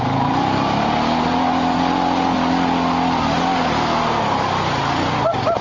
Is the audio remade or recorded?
recorded